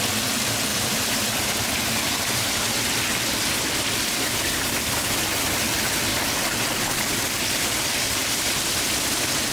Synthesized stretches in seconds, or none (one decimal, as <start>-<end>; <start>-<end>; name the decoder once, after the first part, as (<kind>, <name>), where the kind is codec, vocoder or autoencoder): 0.7-2.7 (vocoder, BigVGAN v2)